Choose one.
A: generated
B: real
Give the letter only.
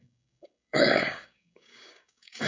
A